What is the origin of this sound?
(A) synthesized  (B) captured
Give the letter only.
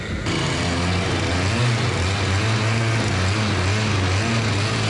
B